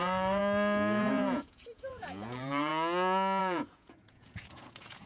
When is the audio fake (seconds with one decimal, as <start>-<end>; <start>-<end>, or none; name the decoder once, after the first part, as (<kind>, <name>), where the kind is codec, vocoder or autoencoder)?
0.0-0.4 (vocoder, Vocos); 1.0-2.7; 3.4-5.1